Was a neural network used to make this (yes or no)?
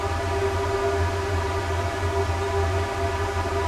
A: no